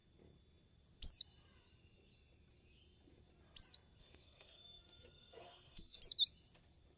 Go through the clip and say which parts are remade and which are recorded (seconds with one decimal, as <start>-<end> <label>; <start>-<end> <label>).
0.0-4.0 recorded; 4.0-6.0 remade; 6.0-7.0 recorded